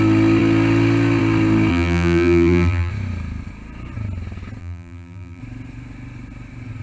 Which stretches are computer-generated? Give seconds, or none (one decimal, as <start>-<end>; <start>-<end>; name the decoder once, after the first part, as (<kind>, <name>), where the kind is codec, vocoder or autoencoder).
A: 1.7-2.9 (vocoder, BigVGAN v2); 4.6-5.4

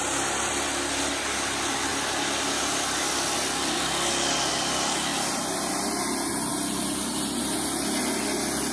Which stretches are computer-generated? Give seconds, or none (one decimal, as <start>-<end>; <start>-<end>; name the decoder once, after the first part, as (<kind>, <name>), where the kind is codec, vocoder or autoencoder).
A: none

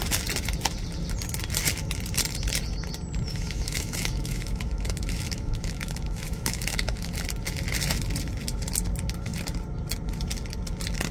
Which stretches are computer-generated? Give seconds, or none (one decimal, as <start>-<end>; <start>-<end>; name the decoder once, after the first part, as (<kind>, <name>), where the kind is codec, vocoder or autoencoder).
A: 3.3-7.1 (autoencoder, DAC-VAE)

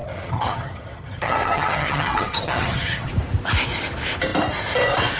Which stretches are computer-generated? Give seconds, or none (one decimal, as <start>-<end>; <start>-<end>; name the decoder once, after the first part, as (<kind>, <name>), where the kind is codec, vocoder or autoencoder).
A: 0.0-3.1 (vocoder, HiFi-GAN)

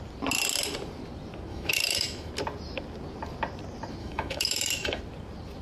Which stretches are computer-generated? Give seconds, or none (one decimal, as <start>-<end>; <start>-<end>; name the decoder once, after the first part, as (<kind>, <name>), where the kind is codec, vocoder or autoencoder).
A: 1.5-2.3 (autoencoder, DAC-VAE); 4.0-5.0

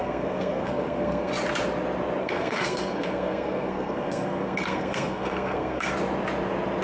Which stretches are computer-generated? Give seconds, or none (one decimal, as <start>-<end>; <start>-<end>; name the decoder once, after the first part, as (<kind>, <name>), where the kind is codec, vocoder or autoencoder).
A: 0.0-1.3 (codec, SNAC); 2.2-5.9